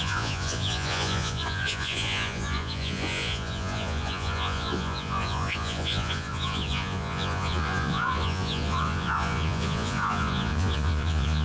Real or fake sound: fake